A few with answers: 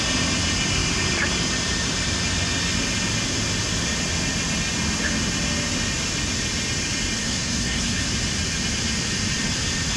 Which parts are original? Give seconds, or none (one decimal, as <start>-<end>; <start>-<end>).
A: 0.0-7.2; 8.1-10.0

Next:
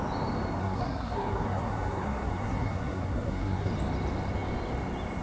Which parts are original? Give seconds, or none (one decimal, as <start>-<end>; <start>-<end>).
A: 0.0-0.6; 3.7-5.2

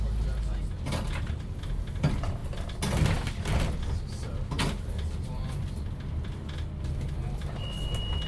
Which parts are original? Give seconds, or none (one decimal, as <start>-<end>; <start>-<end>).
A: 0.0-8.3

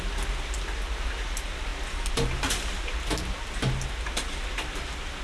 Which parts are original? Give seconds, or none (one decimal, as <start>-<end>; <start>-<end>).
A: 0.0-5.2

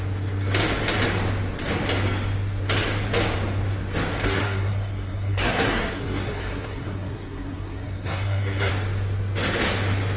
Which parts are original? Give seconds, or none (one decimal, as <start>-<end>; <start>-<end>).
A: 0.0-4.2; 8.7-10.2

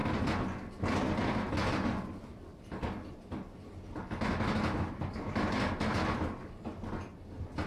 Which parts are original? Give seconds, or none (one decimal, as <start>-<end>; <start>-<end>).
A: 0.0-7.7

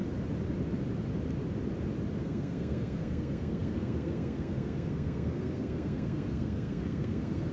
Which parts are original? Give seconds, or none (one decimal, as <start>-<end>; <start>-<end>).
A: 0.0-2.2

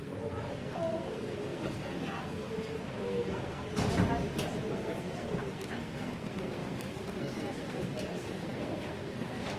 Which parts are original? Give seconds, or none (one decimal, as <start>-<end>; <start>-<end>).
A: 3.7-4.7